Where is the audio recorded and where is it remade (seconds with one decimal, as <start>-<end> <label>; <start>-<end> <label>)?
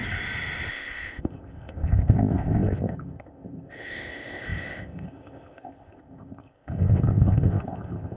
0.0-0.7 recorded; 0.7-8.2 remade